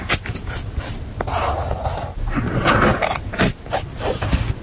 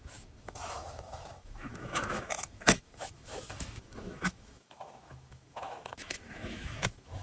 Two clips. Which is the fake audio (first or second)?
second